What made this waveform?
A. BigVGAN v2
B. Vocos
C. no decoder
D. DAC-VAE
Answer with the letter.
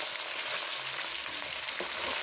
C